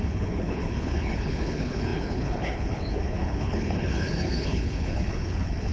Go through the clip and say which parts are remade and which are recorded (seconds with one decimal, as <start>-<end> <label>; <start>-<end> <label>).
0.0-5.7 remade

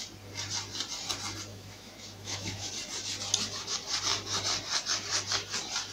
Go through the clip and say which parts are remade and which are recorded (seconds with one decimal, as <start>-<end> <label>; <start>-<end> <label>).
0.0-1.5 recorded; 1.5-2.7 remade; 2.7-5.9 recorded

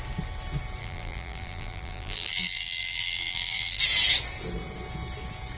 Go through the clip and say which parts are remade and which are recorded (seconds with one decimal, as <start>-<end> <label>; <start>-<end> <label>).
0.0-0.8 recorded; 0.8-3.8 remade; 3.8-5.6 recorded

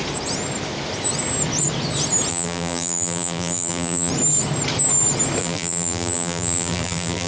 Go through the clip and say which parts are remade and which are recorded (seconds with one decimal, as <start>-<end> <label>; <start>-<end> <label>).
0.0-2.3 recorded; 2.3-4.1 remade; 4.1-5.4 recorded; 5.4-7.3 remade